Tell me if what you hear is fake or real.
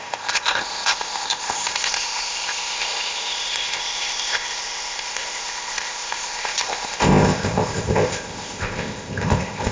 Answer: fake